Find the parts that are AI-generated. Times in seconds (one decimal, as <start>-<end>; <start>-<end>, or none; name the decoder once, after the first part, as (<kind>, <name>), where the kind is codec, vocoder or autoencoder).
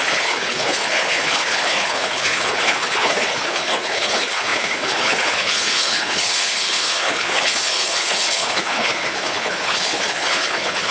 0.0-10.9 (codec, HILCodec)